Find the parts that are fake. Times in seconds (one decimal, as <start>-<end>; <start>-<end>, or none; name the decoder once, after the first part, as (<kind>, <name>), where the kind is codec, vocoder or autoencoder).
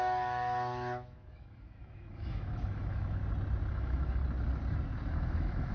0.0-3.2 (autoencoder, DAC-VAE); 3.7-4.2; 5.1-5.7